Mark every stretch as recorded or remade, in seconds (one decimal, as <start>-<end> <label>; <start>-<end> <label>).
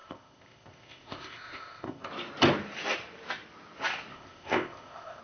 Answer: 0.0-2.1 remade; 2.1-4.1 recorded; 4.1-5.2 remade